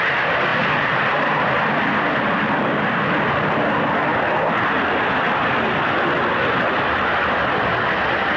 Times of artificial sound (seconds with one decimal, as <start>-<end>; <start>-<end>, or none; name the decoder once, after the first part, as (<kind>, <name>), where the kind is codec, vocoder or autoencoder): 0.5-1.6 (vocoder, BigVGAN v2)